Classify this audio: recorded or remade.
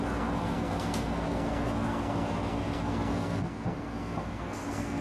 remade